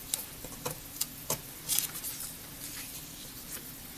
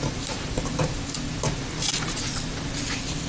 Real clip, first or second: second